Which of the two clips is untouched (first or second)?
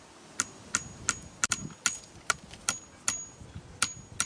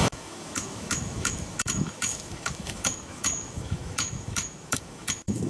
first